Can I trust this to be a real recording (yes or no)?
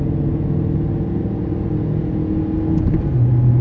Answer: yes